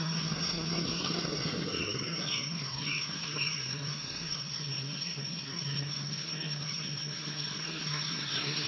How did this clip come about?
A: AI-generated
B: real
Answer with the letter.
A